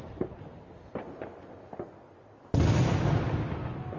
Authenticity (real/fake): real